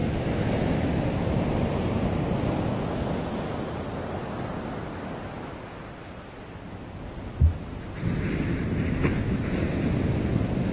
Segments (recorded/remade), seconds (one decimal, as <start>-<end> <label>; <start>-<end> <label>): 0.0-0.9 remade; 0.9-10.7 recorded